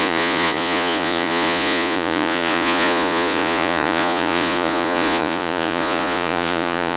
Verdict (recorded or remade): remade